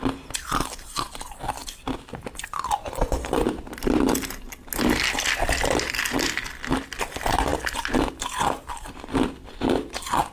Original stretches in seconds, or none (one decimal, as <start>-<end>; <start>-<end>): 0.0-10.3